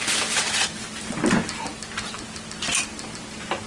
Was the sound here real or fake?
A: real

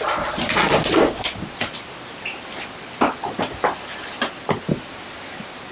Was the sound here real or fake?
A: real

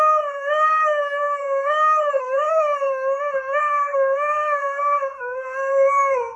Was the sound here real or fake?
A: fake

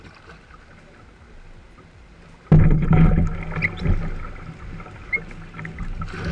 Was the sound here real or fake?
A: real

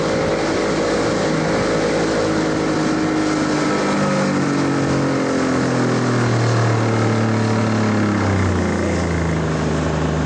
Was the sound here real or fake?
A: real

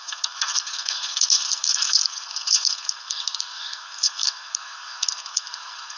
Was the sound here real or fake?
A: fake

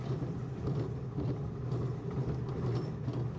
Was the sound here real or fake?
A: real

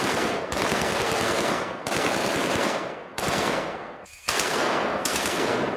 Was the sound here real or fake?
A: fake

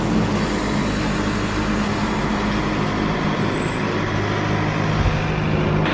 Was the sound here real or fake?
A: real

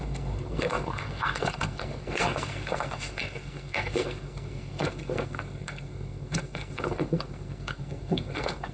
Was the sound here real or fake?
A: fake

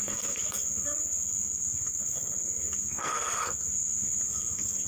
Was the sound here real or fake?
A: fake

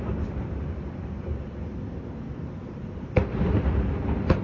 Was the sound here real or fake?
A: real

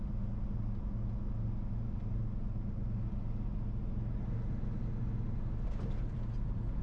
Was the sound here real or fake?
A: real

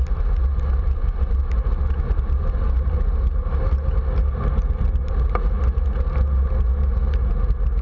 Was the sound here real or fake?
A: real